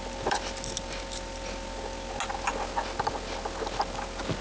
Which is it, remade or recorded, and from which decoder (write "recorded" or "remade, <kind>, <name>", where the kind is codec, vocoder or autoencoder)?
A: recorded